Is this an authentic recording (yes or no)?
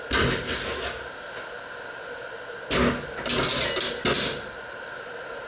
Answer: yes